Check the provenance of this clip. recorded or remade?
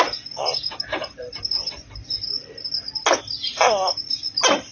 recorded